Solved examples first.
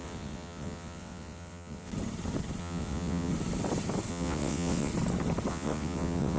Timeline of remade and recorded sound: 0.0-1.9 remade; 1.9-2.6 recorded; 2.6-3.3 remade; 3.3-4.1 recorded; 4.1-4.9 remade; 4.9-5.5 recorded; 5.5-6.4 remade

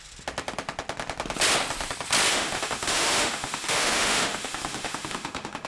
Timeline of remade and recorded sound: 0.0-2.3 recorded; 2.3-5.7 remade